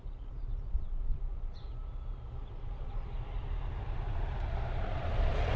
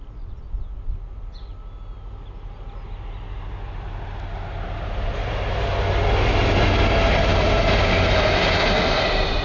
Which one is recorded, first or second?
second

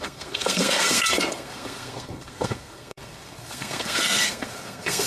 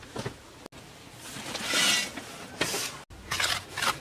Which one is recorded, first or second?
second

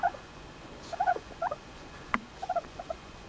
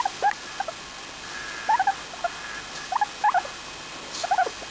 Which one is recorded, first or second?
second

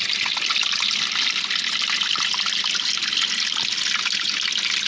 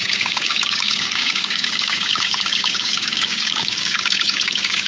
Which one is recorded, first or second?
first